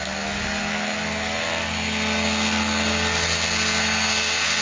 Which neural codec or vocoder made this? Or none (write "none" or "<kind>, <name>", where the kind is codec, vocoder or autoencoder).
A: none